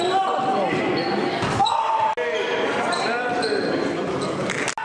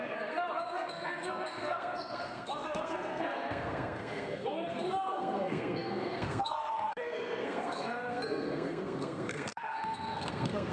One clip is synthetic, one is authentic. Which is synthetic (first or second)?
second